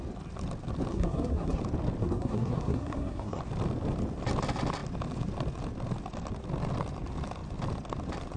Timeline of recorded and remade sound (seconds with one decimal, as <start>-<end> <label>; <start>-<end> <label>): 0.0-0.9 recorded; 0.9-1.6 remade; 1.6-2.0 recorded; 2.0-3.4 remade; 3.4-8.4 recorded